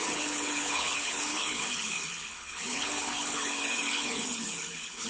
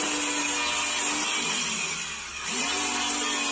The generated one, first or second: first